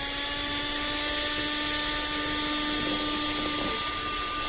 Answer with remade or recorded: recorded